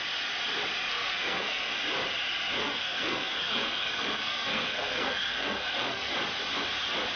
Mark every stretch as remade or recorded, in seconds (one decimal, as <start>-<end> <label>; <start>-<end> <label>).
0.0-0.9 recorded; 0.9-1.7 remade; 1.7-2.6 recorded; 2.6-6.1 remade; 6.1-7.2 recorded